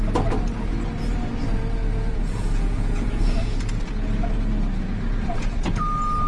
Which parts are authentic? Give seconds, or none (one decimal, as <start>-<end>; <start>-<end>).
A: 0.0-1.9; 3.6-6.3